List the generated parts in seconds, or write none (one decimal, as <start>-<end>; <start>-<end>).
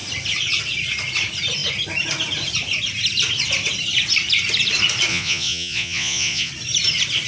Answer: 5.1-6.5